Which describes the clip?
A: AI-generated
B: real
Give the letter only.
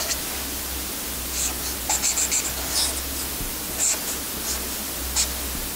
B